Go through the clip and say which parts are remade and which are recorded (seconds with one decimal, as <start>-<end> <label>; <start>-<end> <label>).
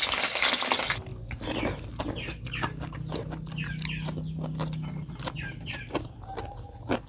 0.0-7.1 recorded